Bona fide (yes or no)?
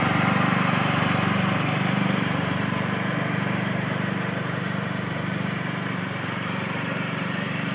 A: no